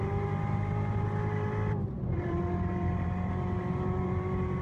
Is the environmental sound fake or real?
fake